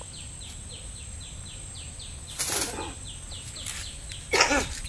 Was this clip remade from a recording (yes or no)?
no